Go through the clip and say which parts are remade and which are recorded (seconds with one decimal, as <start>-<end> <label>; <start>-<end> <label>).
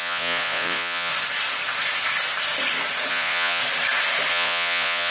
0.0-1.1 remade; 1.1-3.1 recorded; 3.1-3.6 remade; 3.6-4.3 recorded; 4.3-5.1 remade